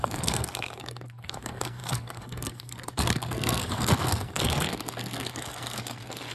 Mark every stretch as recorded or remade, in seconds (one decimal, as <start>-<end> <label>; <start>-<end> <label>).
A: 0.0-6.3 remade